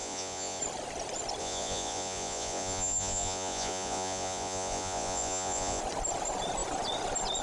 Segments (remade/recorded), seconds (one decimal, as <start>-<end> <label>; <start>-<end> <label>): 0.0-0.6 remade; 0.6-1.4 recorded; 1.4-5.8 remade; 5.8-7.4 recorded